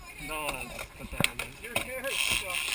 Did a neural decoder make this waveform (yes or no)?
no